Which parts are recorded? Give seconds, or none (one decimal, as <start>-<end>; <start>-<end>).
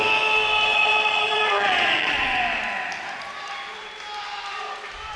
0.0-0.7; 2.4-5.2